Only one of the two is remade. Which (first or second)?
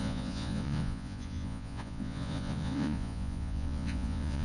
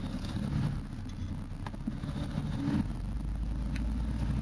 first